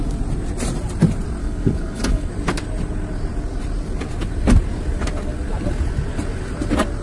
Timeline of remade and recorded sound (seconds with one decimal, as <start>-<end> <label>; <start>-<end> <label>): 0.0-1.4 recorded; 1.4-2.3 remade; 2.3-7.0 recorded